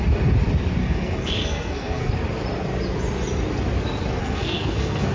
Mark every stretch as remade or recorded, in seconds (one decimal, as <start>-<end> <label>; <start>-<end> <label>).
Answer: 0.0-0.8 recorded; 0.8-2.1 remade; 2.1-4.2 recorded; 4.2-5.1 remade